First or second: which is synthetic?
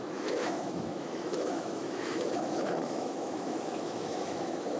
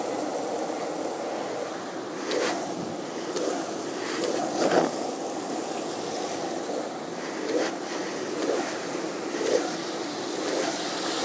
first